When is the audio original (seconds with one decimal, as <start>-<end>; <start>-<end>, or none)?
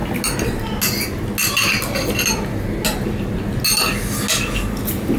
0.0-5.2